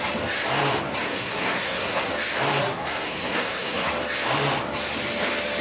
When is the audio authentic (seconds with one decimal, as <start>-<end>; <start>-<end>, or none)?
0.0-1.0; 2.1-2.6; 3.9-5.6